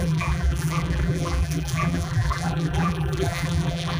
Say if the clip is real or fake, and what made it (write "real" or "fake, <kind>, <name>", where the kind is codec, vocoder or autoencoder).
fake, vocoder, BigVGAN v2